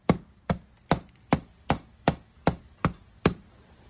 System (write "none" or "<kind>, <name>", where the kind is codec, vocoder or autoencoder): none